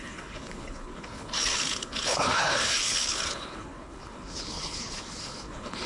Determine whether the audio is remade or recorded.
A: remade